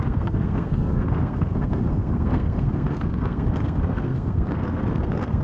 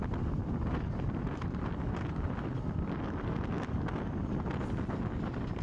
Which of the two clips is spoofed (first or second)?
first